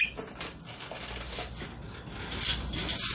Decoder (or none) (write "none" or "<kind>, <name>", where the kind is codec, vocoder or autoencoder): none